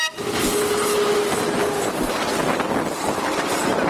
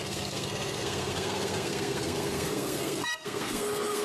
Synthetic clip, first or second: second